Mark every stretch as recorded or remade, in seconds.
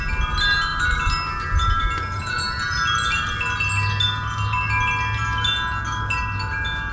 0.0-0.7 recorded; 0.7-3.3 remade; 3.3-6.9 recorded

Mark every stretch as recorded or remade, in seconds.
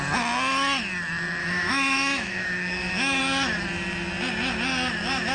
0.0-1.4 recorded; 1.4-3.2 remade; 3.2-5.3 recorded